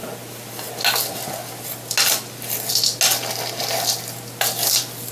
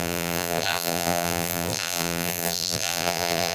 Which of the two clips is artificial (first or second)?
second